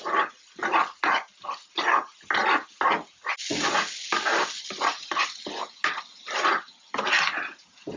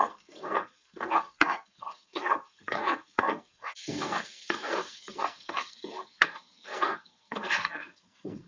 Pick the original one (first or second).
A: first